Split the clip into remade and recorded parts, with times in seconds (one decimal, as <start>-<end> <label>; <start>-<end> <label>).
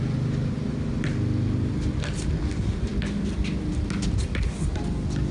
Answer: 0.0-5.3 recorded